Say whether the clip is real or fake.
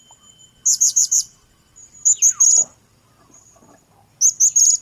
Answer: real